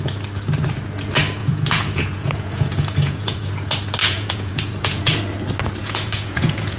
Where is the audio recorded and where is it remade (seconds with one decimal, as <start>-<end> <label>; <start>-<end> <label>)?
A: 0.0-1.4 recorded; 1.4-3.5 remade; 3.5-4.0 recorded; 4.0-5.2 remade; 5.2-5.8 recorded; 5.8-6.8 remade